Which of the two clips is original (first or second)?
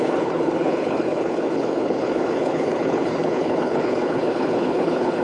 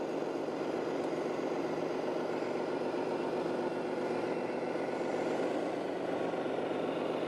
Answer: second